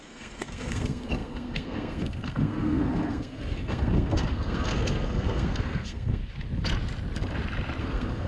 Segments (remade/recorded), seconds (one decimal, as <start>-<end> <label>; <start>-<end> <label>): 0.0-6.2 remade; 6.2-7.8 recorded; 7.8-8.3 remade